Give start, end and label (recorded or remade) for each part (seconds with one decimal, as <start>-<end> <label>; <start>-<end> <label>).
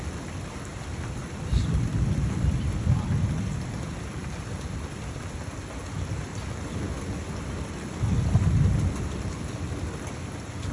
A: 0.0-6.3 remade; 6.3-7.4 recorded; 7.4-10.7 remade